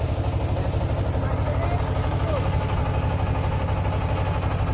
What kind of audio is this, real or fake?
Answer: real